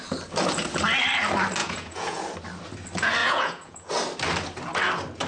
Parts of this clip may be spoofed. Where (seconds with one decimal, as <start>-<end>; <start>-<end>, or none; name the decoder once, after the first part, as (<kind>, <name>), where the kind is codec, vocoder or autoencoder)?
1.6-2.2 (vocoder, Vocos); 3.2-3.9

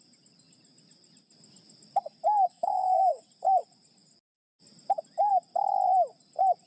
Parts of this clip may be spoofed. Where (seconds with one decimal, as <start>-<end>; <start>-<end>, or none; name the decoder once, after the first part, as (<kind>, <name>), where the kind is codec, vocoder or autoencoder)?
2.5-3.2 (codec, SNAC)